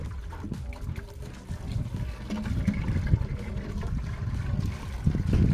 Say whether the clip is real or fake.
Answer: real